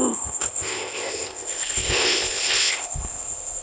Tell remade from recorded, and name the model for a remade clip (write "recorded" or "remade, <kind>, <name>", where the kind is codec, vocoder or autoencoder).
remade, codec, ZipCodec